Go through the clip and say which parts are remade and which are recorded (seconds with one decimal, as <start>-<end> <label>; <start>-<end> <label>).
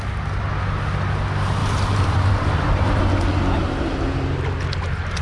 0.0-1.6 recorded; 1.6-3.0 remade; 3.0-5.2 recorded